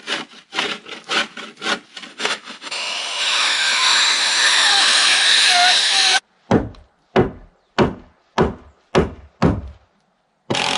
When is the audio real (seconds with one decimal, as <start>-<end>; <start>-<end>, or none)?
0.0-2.1; 6.2-10.8